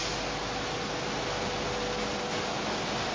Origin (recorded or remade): recorded